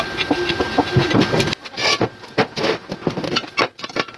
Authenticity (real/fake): real